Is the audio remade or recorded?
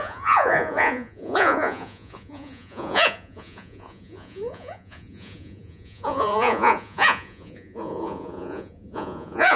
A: remade